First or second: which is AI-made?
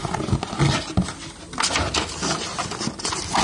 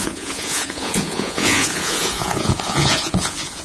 second